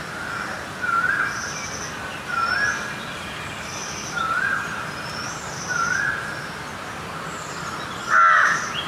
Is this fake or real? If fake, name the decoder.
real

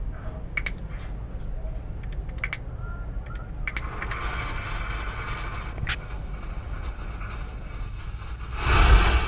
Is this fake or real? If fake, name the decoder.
real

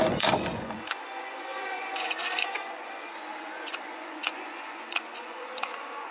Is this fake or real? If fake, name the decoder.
fake, vocoder, Vocos